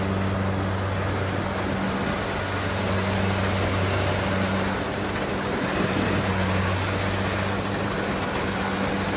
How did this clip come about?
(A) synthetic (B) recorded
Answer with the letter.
B